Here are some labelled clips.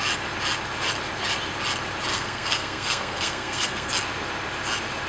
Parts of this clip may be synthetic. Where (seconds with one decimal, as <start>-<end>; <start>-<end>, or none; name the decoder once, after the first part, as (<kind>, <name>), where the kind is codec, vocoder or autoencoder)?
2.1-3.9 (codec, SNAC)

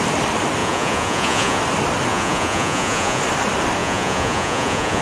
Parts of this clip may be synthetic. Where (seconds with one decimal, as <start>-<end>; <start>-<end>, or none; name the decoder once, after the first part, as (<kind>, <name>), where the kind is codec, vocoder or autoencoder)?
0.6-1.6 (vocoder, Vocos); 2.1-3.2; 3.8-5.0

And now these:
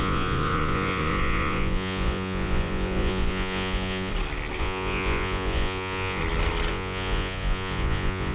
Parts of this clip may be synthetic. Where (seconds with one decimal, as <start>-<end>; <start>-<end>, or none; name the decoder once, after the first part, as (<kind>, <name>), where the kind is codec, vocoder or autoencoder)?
0.0-4.1 (vocoder, Vocos); 4.6-6.2; 6.7-8.3

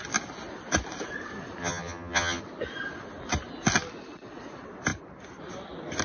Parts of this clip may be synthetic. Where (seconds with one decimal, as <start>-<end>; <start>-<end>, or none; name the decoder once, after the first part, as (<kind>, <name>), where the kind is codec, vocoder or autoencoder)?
1.6-2.4 (vocoder, HiFi-GAN)

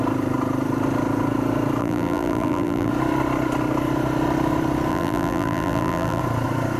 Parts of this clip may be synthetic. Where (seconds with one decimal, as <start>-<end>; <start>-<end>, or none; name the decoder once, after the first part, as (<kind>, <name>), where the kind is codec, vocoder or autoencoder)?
1.8-2.9 (vocoder, BigVGAN v2); 4.9-6.2

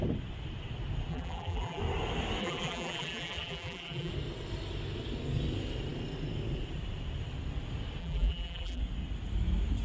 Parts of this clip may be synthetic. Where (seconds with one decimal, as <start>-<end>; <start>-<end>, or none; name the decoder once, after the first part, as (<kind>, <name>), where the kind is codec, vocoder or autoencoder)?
1.1-1.8 (vocoder, BigVGAN v2); 2.4-4.1; 8.0-8.8